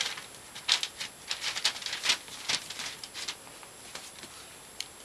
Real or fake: real